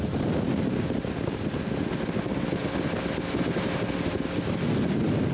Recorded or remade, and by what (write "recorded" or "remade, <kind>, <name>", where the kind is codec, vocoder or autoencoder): recorded